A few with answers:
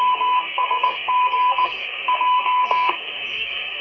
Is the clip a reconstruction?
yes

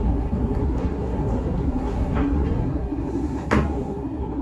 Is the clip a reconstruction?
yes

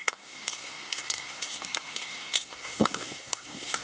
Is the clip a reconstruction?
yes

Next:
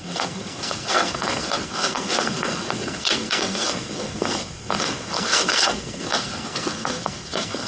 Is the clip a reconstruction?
yes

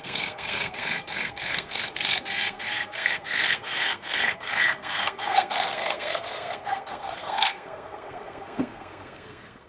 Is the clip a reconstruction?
yes